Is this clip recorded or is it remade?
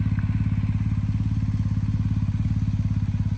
recorded